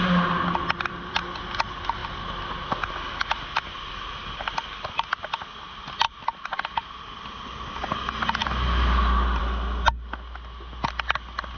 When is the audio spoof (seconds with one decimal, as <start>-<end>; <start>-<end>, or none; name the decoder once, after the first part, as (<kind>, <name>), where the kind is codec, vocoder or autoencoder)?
none